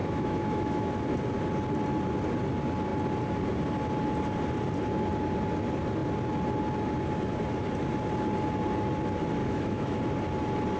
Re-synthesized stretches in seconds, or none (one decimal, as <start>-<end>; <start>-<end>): 0.0-0.9; 9.4-10.0